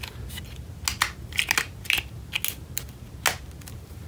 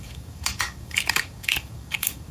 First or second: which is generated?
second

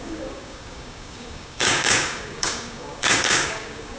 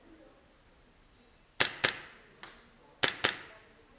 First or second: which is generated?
first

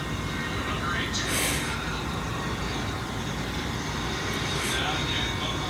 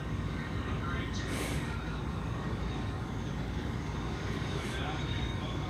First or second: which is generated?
second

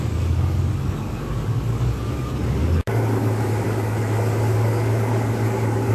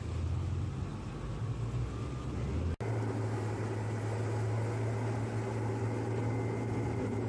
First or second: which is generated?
first